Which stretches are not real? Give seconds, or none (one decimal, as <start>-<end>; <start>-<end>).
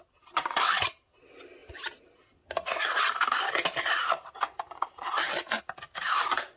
none